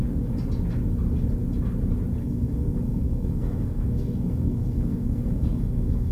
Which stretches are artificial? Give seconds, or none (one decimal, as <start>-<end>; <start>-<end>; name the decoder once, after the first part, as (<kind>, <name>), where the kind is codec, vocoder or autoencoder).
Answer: 2.2-6.1 (codec, SNAC)